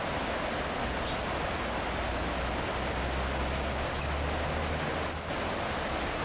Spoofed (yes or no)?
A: no